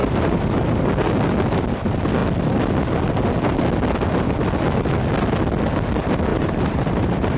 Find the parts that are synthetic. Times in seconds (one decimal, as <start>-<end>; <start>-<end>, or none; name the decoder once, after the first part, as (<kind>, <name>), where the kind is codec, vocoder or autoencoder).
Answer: 0.0-0.9 (vocoder, BigVGAN v2); 6.3-7.4